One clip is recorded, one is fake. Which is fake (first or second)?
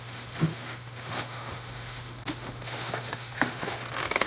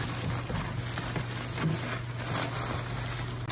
first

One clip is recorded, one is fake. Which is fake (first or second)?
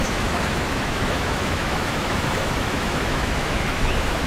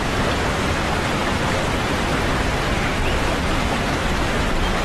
first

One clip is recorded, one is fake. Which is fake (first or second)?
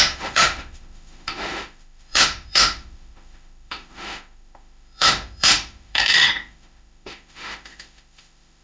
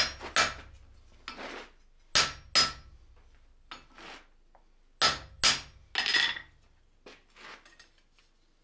first